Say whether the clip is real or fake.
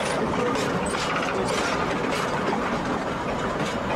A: real